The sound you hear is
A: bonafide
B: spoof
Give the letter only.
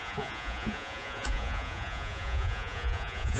B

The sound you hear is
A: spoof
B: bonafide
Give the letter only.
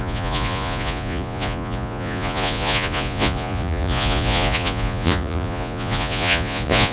A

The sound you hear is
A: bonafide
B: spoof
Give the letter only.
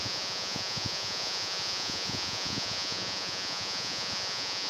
B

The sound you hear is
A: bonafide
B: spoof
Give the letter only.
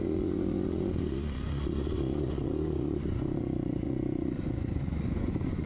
B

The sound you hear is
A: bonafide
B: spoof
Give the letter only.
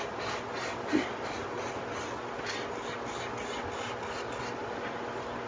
A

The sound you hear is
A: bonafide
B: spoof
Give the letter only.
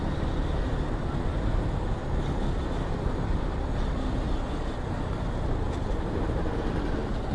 A